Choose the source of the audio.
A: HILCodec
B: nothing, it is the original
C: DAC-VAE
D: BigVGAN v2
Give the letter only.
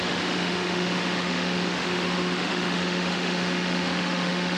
C